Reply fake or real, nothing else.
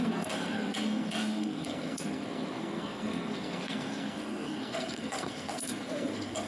fake